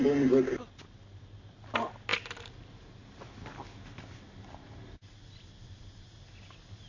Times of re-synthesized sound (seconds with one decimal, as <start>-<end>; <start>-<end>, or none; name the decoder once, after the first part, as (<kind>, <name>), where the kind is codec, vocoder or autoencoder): none